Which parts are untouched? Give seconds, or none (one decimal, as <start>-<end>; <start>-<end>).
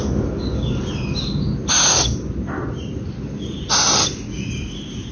0.0-5.1